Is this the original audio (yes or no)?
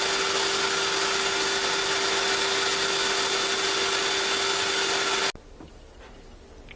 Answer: yes